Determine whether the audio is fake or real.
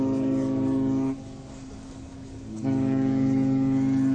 fake